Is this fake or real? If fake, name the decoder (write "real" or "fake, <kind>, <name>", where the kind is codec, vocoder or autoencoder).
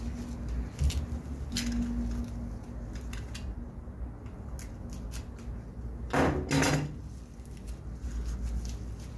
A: real